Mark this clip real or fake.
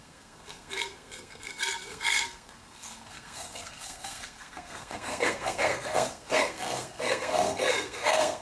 fake